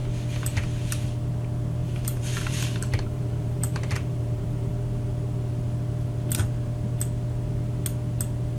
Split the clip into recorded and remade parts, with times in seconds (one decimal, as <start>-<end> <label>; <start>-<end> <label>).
0.0-1.8 recorded; 1.8-4.7 remade; 4.7-8.6 recorded